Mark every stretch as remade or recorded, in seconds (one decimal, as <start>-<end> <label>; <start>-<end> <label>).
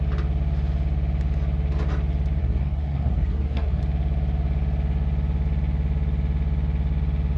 0.0-2.4 recorded; 2.4-3.8 remade; 3.8-7.4 recorded